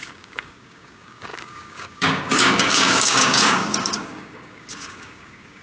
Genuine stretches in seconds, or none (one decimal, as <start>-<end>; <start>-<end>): none